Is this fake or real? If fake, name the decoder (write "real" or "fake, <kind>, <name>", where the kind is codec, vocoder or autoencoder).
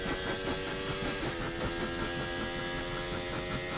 real